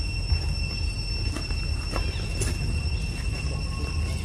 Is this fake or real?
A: real